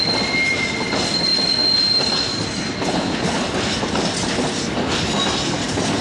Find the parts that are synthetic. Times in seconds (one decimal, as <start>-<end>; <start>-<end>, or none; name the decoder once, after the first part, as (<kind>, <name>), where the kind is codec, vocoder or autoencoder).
none